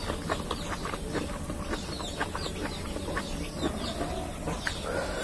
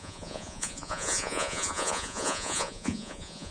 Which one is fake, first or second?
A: second